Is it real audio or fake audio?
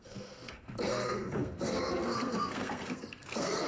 fake